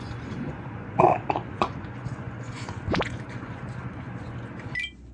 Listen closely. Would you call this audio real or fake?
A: fake